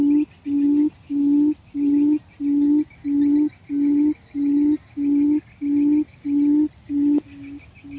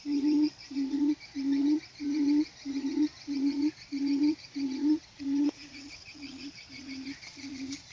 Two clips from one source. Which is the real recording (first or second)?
first